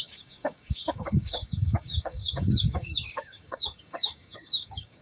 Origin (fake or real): fake